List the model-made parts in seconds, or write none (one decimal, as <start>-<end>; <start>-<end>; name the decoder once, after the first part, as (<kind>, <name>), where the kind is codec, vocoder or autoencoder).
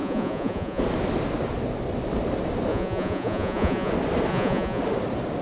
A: 0.0-0.8 (vocoder, Vocos); 2.7-3.9; 4.3-4.8